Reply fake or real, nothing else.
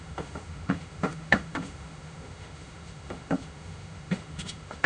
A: fake